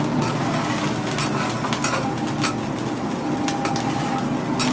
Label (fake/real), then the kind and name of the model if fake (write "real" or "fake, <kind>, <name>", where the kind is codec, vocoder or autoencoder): real